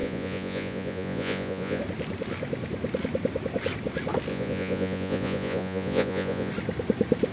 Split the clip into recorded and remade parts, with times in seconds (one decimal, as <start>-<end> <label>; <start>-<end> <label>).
0.0-1.8 remade; 1.8-4.3 recorded; 4.3-6.5 remade; 6.5-7.3 recorded

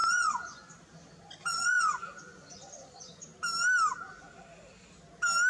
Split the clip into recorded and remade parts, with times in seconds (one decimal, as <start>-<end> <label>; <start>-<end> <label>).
0.0-0.8 remade; 0.8-1.5 recorded; 1.5-3.2 remade; 3.2-5.5 recorded